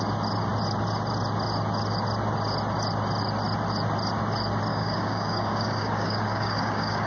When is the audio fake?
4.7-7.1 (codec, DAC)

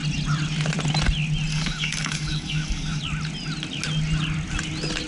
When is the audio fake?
1.5-3.0 (codec, DAC)

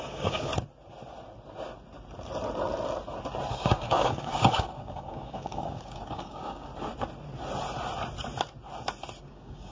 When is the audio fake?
0.0-0.5 (codec, DAC); 3.5-6.7; 9.2-9.7

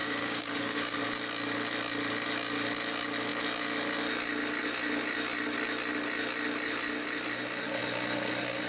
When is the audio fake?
0.0-1.0 (codec, DAC)

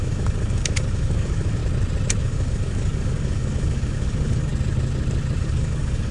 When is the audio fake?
0.0-1.6 (codec, DAC); 2.2-4.5; 5.4-6.1